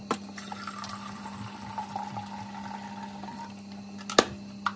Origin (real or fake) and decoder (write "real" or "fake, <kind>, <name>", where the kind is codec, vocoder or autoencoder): real